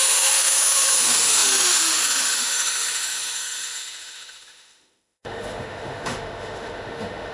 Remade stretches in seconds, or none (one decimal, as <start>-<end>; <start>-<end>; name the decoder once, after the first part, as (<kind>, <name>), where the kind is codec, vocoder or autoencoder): 0.0-7.3 (autoencoder, DAC-VAE)